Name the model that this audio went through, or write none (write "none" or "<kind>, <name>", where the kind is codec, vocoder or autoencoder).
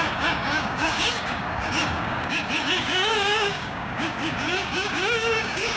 codec, DAC